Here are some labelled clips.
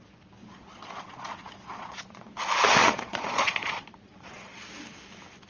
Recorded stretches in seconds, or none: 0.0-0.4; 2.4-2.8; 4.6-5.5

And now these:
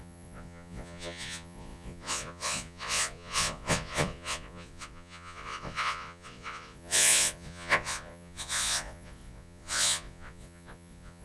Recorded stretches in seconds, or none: none